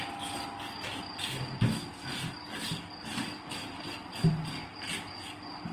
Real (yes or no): yes